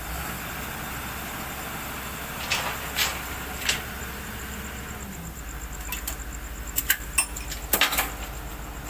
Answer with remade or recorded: recorded